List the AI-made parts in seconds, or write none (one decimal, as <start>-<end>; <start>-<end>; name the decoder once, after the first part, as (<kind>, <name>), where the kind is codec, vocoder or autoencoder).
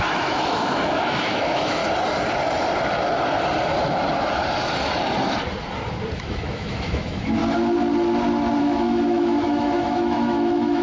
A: 0.0-1.8 (autoencoder, DAC-VAE); 6.2-7.4; 8.6-10.8